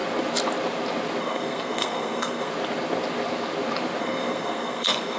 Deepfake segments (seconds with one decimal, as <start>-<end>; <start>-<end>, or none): 1.2-2.5; 4.0-5.2